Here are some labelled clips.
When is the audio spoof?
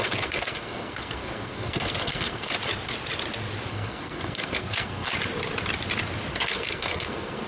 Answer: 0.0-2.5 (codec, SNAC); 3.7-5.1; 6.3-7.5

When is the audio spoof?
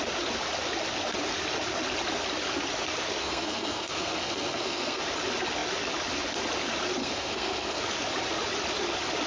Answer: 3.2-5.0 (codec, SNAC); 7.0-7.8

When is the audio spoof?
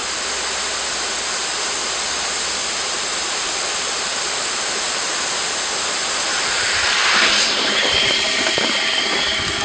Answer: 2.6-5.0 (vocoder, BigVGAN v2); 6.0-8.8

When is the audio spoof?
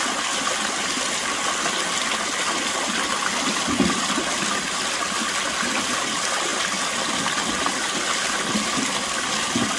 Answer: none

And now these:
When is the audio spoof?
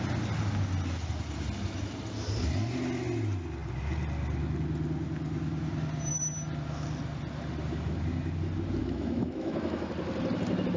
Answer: 8.8-9.9 (autoencoder, DAC-VAE)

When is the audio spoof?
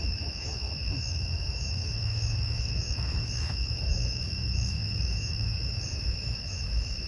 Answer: 0.0-7.1 (autoencoder, DAC-VAE)